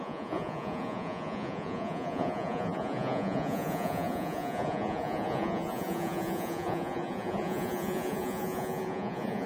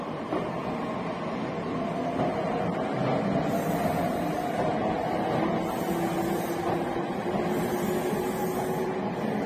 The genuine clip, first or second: second